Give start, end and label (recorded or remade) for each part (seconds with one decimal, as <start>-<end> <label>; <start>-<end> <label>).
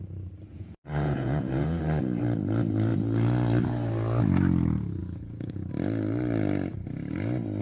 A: 0.0-0.5 recorded; 0.5-1.8 remade; 1.8-5.0 recorded; 5.0-5.7 remade; 5.7-7.6 recorded